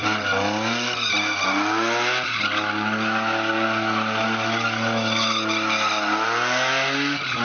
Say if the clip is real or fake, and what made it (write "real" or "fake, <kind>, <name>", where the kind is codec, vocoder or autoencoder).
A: real